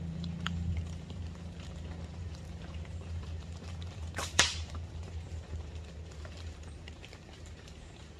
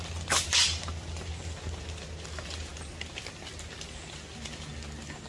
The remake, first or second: first